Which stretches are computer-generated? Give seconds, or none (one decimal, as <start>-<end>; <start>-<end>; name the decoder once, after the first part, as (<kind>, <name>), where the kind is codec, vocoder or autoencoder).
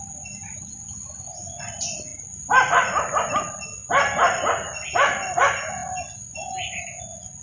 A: none